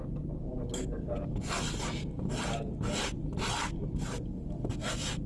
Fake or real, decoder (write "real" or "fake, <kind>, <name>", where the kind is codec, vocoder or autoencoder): real